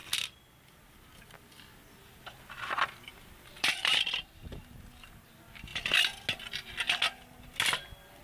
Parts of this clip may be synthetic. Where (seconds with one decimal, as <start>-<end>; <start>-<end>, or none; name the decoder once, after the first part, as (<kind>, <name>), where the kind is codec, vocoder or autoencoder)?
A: 3.5-4.0 (vocoder, BigVGAN v2); 4.6-5.3